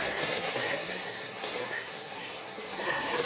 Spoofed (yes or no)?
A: yes